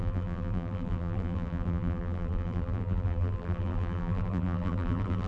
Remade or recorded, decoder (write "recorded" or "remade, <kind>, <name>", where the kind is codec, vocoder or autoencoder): remade, vocoder, BigVGAN v2